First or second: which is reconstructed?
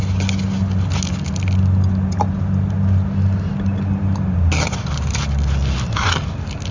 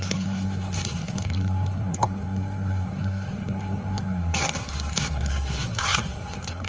second